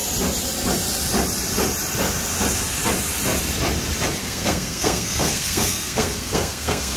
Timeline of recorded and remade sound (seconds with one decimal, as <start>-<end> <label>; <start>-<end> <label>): 0.0-4.2 recorded; 4.2-7.0 remade